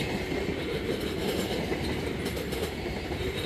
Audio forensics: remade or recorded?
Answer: recorded